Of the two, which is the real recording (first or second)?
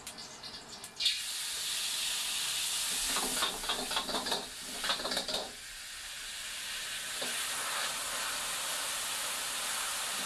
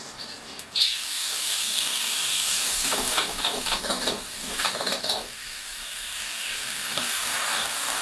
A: first